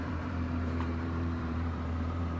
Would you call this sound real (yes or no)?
no